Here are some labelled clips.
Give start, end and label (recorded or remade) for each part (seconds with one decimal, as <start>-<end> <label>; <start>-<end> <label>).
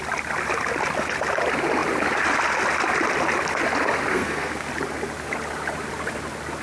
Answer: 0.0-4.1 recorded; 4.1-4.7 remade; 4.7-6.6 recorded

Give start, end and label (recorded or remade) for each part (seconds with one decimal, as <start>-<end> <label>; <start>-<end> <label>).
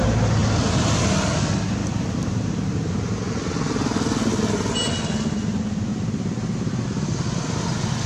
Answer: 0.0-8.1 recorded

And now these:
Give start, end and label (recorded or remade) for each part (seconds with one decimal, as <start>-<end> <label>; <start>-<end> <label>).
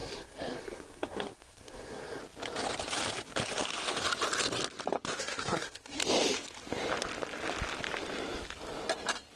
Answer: 0.0-2.2 remade; 2.2-5.2 recorded; 5.2-6.0 remade; 6.0-9.4 recorded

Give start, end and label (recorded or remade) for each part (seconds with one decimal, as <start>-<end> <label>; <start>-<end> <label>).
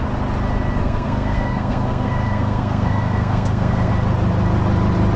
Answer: 0.0-0.8 recorded; 0.8-3.9 remade; 3.9-5.2 recorded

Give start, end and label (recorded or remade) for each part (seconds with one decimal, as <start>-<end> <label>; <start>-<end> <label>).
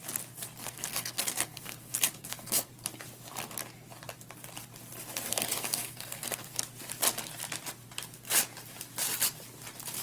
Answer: 0.0-0.6 recorded; 0.6-2.7 remade; 2.7-5.3 recorded; 5.3-6.6 remade; 6.6-10.0 recorded